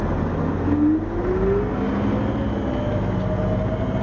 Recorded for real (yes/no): yes